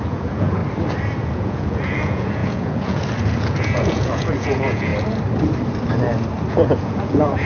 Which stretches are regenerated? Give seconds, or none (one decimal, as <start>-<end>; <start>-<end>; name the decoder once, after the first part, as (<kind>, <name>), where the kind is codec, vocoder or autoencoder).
0.0-0.6 (vocoder, Vocos); 1.3-4.9; 6.5-7.5